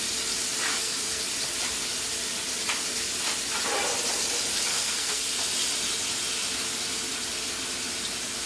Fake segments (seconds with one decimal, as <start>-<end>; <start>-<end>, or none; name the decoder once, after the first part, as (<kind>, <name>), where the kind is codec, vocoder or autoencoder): 0.7-1.2 (codec, SNAC); 4.7-5.2